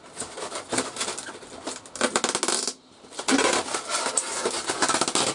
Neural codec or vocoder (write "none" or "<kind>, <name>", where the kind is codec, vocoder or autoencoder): none